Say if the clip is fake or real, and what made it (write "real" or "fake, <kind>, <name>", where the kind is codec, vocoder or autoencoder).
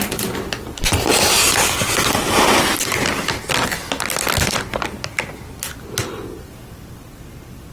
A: real